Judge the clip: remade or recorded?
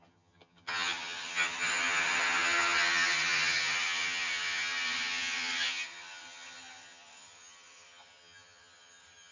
remade